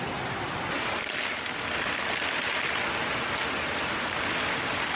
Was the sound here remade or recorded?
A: recorded